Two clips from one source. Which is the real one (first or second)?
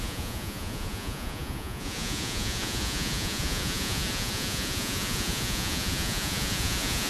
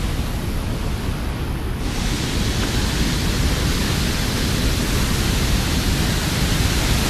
second